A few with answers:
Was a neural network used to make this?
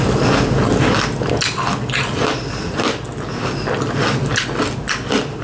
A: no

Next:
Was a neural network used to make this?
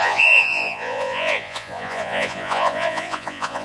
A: yes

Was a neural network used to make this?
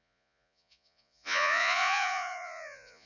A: yes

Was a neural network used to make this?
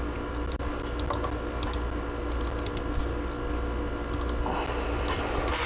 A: no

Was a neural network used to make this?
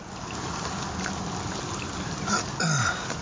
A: no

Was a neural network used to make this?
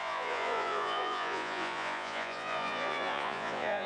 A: yes